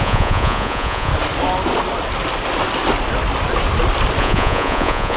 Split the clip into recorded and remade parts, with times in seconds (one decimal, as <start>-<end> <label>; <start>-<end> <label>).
0.0-1.1 remade; 1.1-4.2 recorded; 4.2-5.2 remade